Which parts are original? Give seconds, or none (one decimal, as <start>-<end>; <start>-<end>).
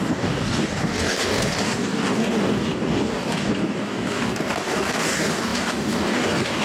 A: none